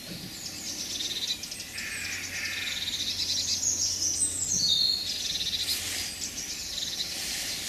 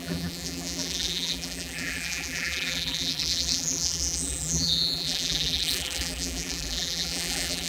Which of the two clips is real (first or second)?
first